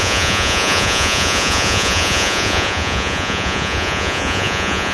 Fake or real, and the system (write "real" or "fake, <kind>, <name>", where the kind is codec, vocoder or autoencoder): fake, vocoder, Vocos